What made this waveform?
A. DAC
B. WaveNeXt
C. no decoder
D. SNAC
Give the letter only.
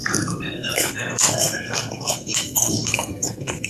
D